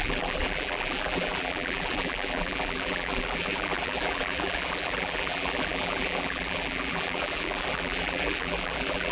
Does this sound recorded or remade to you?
remade